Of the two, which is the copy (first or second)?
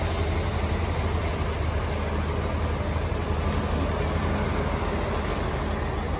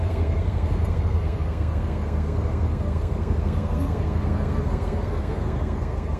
second